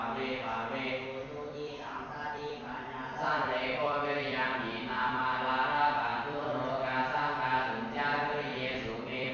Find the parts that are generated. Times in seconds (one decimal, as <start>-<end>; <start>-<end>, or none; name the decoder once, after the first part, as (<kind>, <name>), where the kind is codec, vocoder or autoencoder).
1.2-5.2 (vocoder, BigVGAN v2); 6.1-6.7; 8.5-9.3